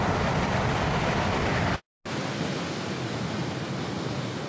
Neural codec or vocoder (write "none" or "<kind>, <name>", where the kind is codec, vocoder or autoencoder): none